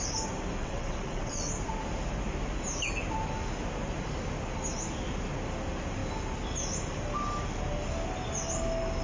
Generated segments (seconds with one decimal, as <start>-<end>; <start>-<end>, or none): 0.6-1.5